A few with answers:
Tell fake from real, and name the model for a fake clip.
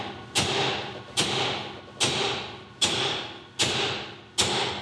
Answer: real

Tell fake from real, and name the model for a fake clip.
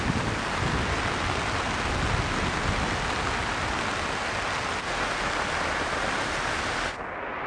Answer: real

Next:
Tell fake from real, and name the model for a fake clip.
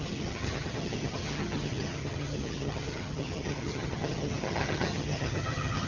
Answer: fake, vocoder, HiFi-GAN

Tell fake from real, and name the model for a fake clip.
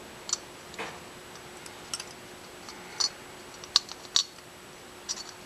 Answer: real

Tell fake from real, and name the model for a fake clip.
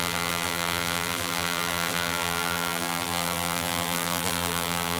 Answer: fake, vocoder, BigVGAN v2